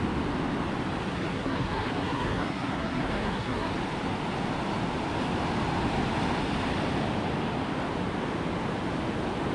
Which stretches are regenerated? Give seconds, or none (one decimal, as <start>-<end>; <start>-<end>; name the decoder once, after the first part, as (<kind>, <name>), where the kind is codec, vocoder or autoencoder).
1.1-3.7 (codec, SNAC)